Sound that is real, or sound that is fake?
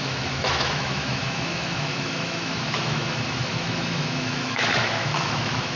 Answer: fake